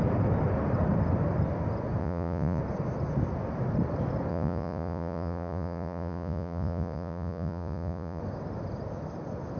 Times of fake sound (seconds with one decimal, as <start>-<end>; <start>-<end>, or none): 2.0-2.6; 4.3-8.2